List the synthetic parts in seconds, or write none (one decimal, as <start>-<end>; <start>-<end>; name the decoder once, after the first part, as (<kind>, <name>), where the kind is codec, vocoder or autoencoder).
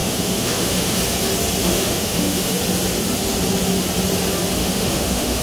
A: 0.0-1.0 (autoencoder, DAC-VAE); 1.6-2.6; 4.6-5.4